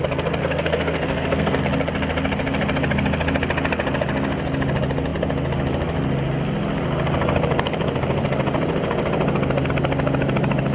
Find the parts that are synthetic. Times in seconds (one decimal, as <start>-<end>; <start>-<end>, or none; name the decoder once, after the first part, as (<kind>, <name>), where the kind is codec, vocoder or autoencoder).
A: 0.4-1.6 (codec, SNAC)